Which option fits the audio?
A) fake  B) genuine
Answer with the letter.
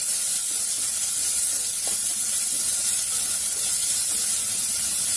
B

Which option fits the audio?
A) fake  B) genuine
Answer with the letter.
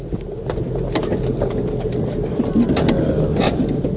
B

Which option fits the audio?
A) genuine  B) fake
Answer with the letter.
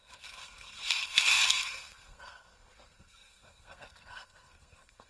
B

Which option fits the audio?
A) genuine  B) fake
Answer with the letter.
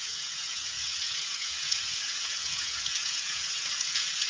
B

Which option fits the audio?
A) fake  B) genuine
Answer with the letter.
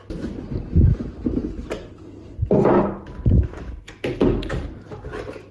B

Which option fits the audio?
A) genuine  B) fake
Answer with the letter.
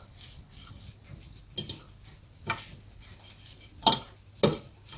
A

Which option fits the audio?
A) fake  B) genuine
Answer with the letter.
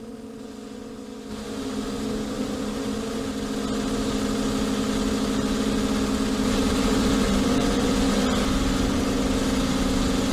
B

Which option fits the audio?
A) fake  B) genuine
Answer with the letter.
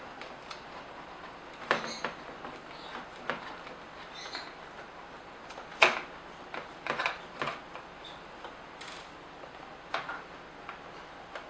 B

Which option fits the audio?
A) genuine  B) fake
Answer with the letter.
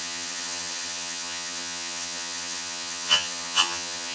B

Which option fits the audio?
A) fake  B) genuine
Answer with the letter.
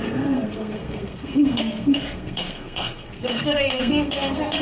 A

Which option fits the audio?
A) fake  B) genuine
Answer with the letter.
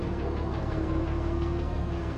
A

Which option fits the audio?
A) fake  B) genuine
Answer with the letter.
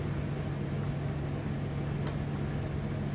B